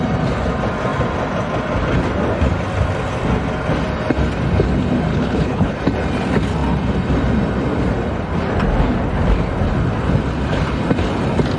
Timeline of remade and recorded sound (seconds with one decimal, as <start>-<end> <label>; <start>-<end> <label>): 0.0-5.1 recorded; 5.1-5.8 remade; 5.8-11.6 recorded